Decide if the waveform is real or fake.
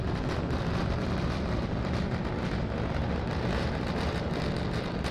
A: fake